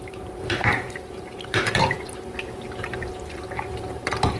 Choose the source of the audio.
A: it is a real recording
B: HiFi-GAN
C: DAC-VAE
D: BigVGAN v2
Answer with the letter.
D